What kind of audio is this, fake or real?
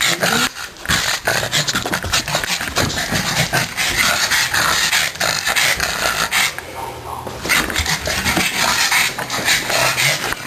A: real